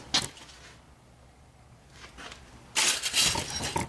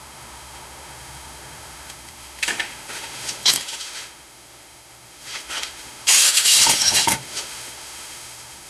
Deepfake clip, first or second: second